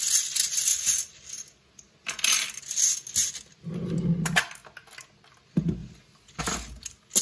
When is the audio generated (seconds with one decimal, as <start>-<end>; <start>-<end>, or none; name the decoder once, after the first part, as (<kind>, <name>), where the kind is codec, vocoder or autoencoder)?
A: 5.8-6.4 (vocoder, BigVGAN v2)

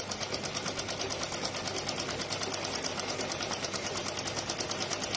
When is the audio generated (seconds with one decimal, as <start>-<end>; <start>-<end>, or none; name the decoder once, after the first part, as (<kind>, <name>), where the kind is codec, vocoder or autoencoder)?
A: 2.9-4.2 (vocoder, BigVGAN v2)

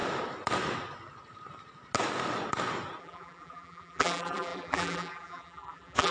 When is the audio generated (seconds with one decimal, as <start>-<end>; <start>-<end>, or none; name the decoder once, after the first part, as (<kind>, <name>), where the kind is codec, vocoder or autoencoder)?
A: 3.0-6.1 (vocoder, BigVGAN v2)

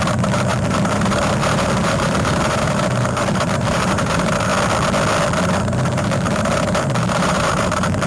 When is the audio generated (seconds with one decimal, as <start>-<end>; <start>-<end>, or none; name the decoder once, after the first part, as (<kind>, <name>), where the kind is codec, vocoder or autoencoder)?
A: 0.0-4.5 (vocoder, BigVGAN v2); 5.5-8.1

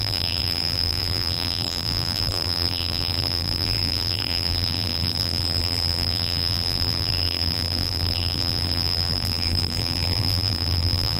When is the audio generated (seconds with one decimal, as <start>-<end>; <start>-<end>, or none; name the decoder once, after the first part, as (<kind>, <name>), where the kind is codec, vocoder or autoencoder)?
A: 0.0-11.2 (vocoder, BigVGAN v2)

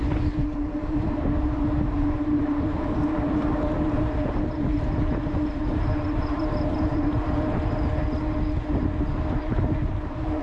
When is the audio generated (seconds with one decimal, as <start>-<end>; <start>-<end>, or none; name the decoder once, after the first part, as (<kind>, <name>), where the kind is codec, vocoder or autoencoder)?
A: 0.0-8.0 (vocoder, BigVGAN v2); 9.0-10.4

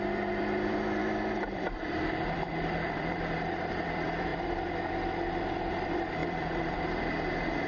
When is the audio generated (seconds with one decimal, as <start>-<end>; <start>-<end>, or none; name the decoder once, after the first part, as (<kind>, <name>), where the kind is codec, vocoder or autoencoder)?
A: 0.0-4.3 (vocoder, BigVGAN v2); 5.7-7.7

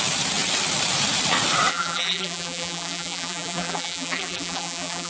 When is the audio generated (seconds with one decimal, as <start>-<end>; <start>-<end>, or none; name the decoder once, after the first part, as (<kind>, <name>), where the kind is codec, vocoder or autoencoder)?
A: 1.7-5.1 (vocoder, BigVGAN v2)